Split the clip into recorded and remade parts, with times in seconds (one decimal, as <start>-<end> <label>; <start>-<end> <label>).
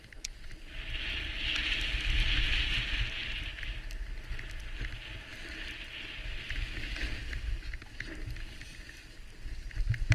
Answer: 0.0-10.1 recorded